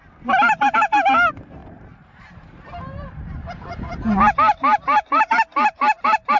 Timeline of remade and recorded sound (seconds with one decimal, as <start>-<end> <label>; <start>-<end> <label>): 0.0-1.6 recorded; 1.6-3.6 remade; 3.6-4.5 recorded; 4.5-6.4 remade